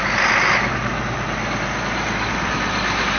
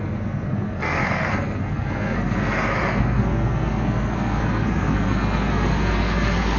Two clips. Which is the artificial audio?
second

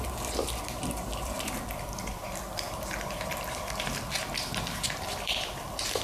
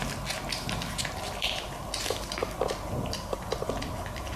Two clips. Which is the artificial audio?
first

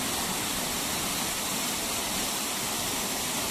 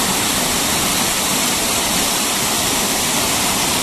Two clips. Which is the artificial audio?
second